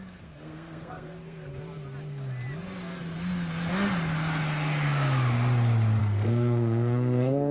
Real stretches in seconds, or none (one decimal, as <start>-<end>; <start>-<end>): 1.5-6.0